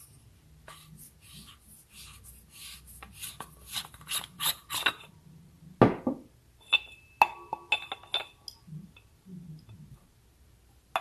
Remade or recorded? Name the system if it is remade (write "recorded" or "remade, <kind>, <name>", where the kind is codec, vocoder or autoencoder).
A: recorded